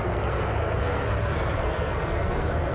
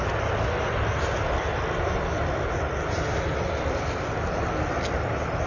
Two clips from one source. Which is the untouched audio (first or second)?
second